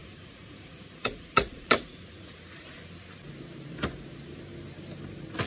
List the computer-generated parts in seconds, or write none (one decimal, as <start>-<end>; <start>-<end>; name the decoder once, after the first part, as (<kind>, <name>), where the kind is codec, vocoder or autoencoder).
0.0-2.7 (vocoder, Vocos)